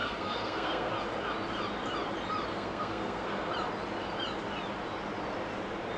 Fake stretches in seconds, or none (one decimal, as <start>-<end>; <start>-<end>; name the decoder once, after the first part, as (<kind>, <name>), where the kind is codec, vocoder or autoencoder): 0.0-0.9 (codec, SNAC); 2.5-3.5